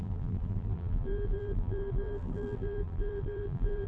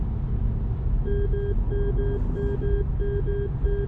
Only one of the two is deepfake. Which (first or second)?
first